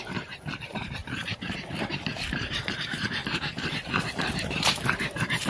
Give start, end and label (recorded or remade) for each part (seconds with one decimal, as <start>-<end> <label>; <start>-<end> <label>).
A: 0.0-5.5 remade